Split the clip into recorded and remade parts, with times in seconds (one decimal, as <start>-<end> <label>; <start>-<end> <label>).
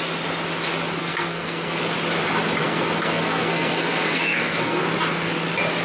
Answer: 0.0-1.0 recorded; 1.0-1.8 remade; 1.8-2.6 recorded; 2.6-4.8 remade; 4.8-5.8 recorded